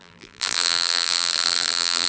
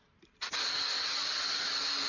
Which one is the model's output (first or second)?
first